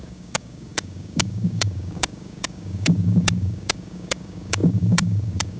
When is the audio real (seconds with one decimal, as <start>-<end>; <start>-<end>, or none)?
none